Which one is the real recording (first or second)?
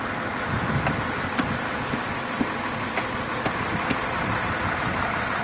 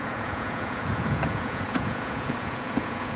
first